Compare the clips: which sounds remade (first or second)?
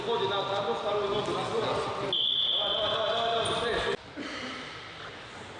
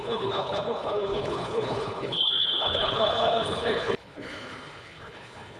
second